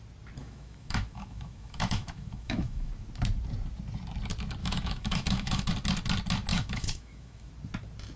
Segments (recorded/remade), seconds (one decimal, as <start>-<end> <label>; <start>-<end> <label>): 0.0-0.4 recorded; 0.4-2.9 remade; 2.9-4.6 recorded; 4.6-5.7 remade; 5.7-6.5 recorded; 6.5-7.5 remade; 7.5-8.2 recorded